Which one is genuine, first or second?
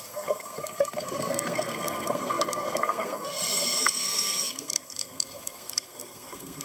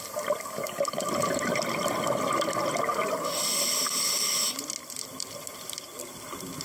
second